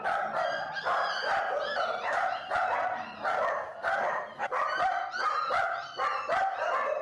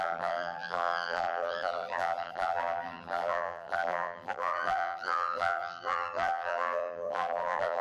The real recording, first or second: first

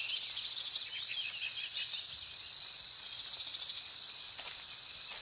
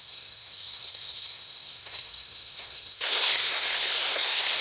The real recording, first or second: first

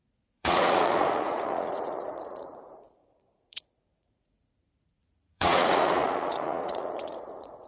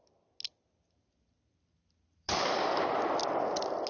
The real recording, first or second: second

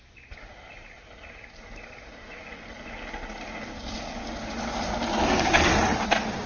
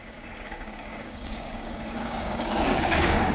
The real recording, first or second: first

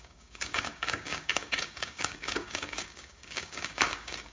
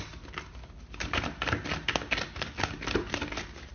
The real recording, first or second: second